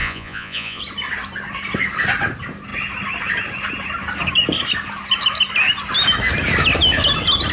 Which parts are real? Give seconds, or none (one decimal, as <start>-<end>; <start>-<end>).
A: 0.8-7.5